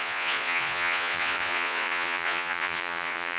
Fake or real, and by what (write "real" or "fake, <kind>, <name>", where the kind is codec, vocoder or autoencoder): fake, vocoder, Vocos